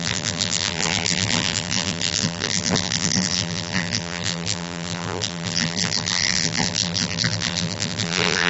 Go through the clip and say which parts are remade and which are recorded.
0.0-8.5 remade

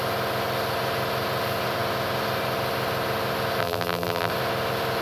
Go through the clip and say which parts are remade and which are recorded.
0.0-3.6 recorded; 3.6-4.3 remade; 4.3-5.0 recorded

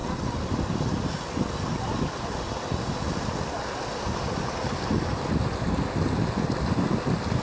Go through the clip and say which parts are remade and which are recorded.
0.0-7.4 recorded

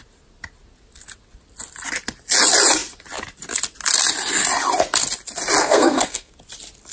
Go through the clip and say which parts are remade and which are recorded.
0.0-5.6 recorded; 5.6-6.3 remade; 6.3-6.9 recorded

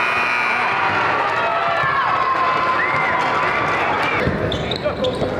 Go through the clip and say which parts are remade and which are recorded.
0.0-5.4 recorded

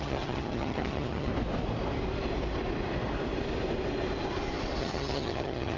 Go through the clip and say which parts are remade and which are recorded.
0.0-1.3 remade; 1.3-4.8 recorded; 4.8-5.8 remade